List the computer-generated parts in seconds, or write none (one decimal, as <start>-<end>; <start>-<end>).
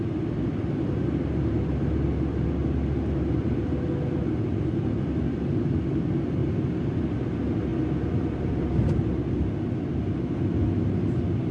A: none